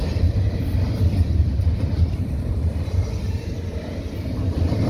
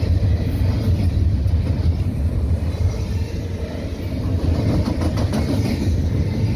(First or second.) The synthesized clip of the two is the first